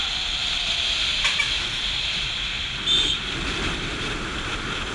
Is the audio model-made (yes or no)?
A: no